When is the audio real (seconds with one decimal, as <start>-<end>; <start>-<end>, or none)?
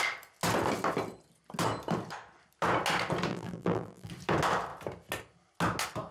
0.0-3.3; 4.1-6.1